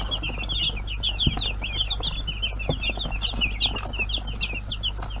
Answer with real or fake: real